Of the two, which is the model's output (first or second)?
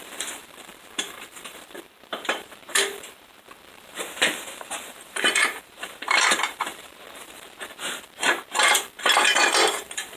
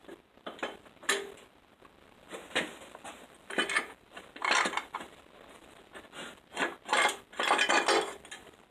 first